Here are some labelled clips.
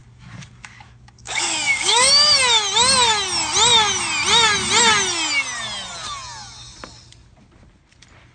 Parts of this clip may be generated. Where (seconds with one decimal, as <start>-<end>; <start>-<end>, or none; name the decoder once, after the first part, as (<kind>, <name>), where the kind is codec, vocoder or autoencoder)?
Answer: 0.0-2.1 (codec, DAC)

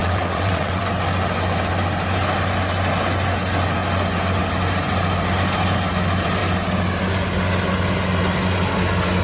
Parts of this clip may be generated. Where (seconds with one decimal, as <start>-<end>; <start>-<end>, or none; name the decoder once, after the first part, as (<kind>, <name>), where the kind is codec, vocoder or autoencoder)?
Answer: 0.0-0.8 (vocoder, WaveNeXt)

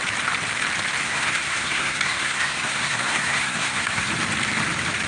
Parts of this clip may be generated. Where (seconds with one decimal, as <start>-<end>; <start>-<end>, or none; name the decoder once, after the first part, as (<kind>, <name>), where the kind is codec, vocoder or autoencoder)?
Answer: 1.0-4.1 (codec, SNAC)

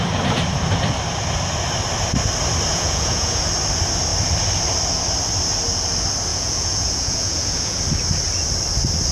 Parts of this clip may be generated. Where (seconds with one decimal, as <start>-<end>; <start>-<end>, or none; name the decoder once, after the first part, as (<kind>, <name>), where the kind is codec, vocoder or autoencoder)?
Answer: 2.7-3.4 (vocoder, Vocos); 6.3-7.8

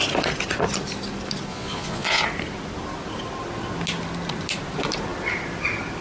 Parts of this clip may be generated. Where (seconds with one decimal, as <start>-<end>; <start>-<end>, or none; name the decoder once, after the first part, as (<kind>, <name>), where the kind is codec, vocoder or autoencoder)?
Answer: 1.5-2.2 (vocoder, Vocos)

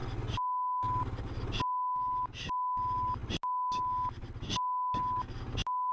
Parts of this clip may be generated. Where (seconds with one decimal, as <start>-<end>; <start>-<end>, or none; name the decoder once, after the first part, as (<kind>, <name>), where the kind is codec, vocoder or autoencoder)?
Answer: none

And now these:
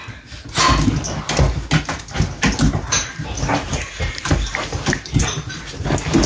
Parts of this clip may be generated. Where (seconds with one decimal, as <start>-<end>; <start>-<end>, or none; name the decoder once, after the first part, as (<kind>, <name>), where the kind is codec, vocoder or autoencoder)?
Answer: 2.9-5.2 (vocoder, BigVGAN v2)